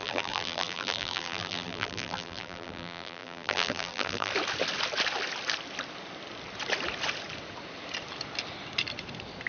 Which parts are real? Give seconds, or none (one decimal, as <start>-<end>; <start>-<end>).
4.3-9.5